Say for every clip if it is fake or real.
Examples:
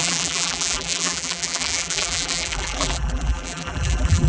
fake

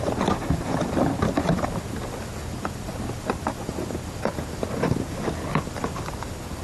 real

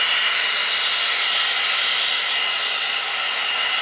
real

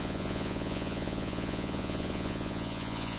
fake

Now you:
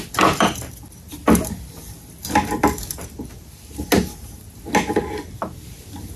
real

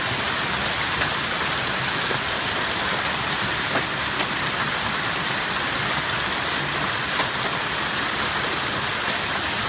real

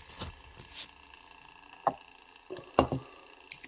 real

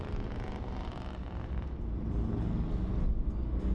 real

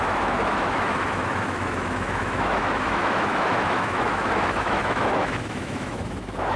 fake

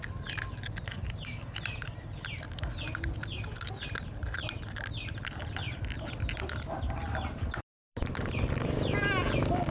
real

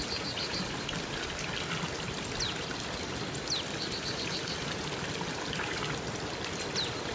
real